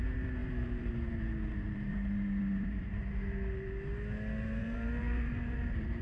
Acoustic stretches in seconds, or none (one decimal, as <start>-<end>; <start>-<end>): 3.0-4.6